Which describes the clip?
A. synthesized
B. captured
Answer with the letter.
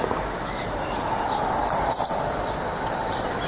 A